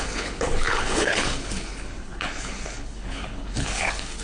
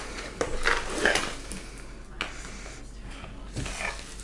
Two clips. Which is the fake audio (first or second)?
first